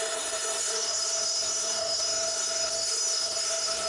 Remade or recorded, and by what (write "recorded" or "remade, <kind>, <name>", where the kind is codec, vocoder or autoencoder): remade, codec, SNAC